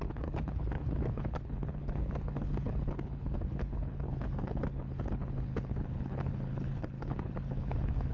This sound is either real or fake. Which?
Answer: fake